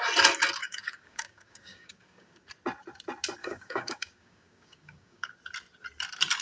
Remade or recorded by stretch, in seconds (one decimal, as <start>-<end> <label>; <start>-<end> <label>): 0.0-0.6 recorded; 0.6-2.5 remade; 2.5-3.4 recorded; 3.4-5.3 remade; 5.3-6.4 recorded